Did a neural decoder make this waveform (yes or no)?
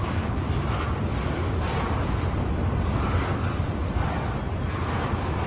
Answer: no